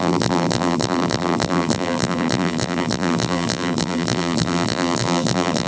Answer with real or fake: fake